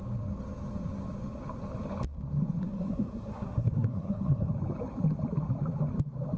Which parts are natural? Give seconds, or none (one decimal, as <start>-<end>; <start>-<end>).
0.0-2.6; 4.5-6.4